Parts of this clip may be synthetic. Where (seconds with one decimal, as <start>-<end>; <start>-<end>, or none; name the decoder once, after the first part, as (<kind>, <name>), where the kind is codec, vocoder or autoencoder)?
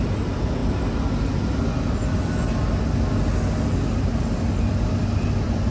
none